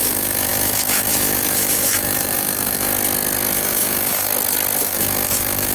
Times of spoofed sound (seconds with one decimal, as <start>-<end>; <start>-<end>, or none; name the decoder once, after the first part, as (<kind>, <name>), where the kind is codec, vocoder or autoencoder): 0.0-2.9 (autoencoder, DAC-VAE); 3.6-4.3; 4.8-5.7